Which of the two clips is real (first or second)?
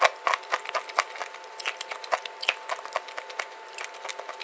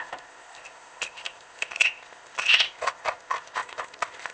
first